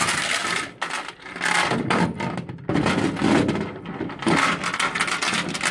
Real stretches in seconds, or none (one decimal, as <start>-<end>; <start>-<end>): 0.0-5.7